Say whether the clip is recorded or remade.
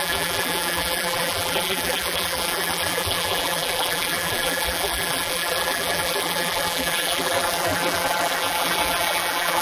remade